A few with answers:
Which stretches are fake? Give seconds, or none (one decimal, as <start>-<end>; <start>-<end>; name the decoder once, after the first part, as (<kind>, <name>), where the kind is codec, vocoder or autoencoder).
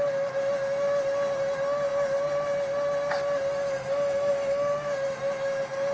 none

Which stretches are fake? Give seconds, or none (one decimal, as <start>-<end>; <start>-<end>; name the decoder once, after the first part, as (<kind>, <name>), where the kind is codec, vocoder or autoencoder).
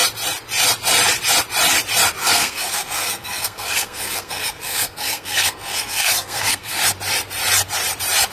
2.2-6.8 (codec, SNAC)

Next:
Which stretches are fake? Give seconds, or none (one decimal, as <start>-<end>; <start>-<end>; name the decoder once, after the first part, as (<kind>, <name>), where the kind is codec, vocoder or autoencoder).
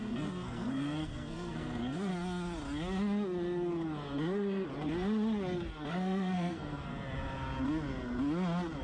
0.0-2.1 (codec, SNAC); 5.9-6.9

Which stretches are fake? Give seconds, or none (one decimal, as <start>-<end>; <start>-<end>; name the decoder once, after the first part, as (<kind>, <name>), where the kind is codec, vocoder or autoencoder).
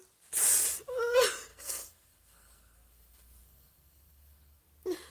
1.5-4.6 (codec, SNAC)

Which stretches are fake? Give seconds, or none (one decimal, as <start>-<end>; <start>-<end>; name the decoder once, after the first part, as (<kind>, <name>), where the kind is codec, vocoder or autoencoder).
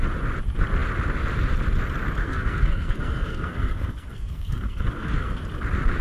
2.2-5.4 (codec, SNAC)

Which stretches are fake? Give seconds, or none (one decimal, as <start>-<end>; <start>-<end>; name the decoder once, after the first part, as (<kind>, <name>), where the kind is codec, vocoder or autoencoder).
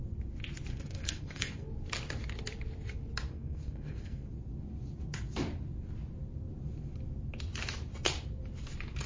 0.7-1.7 (codec, SNAC); 3.3-4.3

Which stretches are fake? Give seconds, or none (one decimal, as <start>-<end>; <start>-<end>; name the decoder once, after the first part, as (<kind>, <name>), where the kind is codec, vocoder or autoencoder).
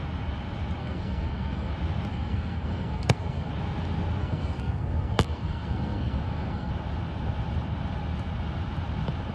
0.8-1.7 (codec, SNAC); 2.1-3.5; 4.2-6.7